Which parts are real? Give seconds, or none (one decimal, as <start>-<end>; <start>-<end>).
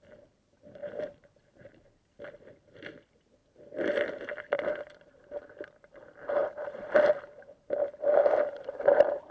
0.8-2.3